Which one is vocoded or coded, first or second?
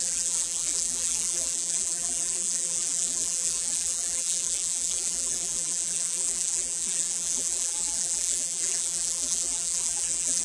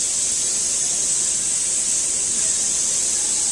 first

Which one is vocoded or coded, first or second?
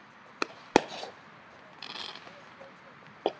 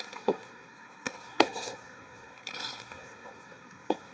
second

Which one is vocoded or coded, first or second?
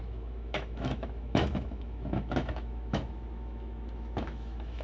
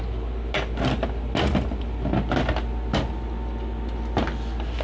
first